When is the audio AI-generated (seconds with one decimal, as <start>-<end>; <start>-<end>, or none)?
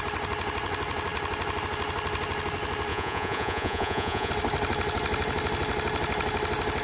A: 2.9-4.3